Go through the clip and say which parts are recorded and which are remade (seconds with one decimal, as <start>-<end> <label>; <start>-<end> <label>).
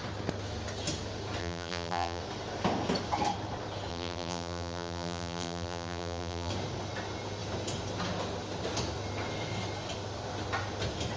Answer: 0.0-1.4 recorded; 1.4-2.2 remade; 2.2-3.9 recorded; 3.9-6.5 remade; 6.5-11.2 recorded